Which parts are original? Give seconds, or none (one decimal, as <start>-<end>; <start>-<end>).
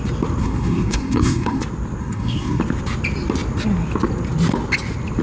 0.0-0.4; 1.6-2.0; 2.6-5.2